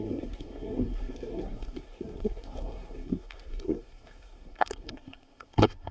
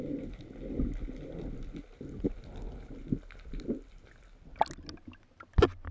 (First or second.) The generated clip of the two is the first